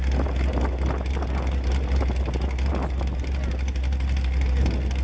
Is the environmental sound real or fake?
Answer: real